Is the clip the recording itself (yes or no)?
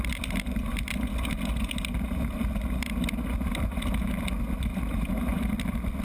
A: yes